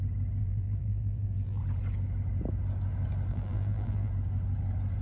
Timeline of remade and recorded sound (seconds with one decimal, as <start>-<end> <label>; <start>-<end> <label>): 0.0-0.4 recorded; 0.4-1.6 remade; 1.6-3.3 recorded; 3.3-4.1 remade; 4.1-5.0 recorded